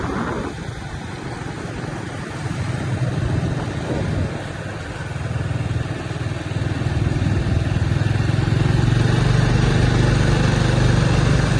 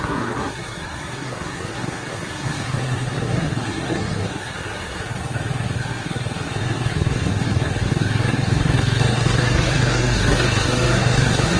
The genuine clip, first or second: first